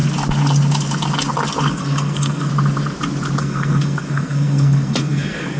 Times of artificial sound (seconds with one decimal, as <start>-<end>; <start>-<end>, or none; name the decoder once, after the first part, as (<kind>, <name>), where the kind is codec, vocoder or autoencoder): 1.7-2.5 (codec, SNAC); 3.4-5.6